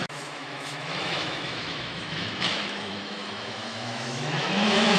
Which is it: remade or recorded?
remade